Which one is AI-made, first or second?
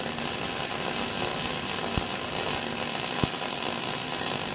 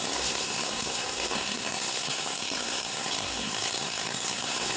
second